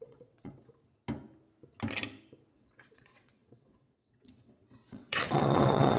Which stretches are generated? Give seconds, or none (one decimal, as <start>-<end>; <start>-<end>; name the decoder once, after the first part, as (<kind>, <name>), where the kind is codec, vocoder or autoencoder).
0.0-0.6 (vocoder, WaveNeXt); 2.5-6.0

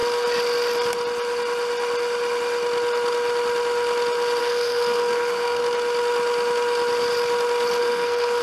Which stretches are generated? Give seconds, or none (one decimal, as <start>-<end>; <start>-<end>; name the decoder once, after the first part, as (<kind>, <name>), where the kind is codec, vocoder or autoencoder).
4.4-5.6 (codec, SNAC); 7.8-8.4

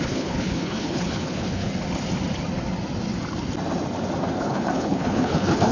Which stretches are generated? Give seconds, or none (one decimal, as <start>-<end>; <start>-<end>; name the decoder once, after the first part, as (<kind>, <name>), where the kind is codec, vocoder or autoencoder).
0.0-1.7 (codec, HILCodec); 4.4-5.7